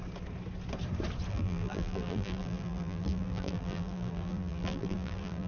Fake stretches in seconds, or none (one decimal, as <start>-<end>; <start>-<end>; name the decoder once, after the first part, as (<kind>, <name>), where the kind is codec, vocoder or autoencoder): 1.3-5.5 (vocoder, BigVGAN v2)